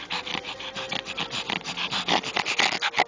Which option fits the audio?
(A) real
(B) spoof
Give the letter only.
A